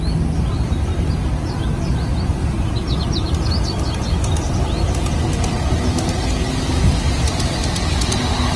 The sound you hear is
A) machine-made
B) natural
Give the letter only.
B